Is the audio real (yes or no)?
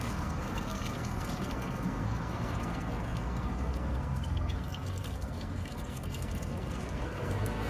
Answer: no